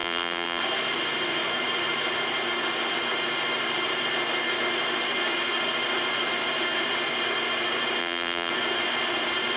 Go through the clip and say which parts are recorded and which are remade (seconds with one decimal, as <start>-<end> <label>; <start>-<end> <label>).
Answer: 0.0-0.6 remade; 0.6-8.0 recorded; 8.0-8.5 remade; 8.5-9.6 recorded